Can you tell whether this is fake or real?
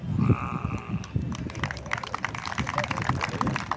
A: real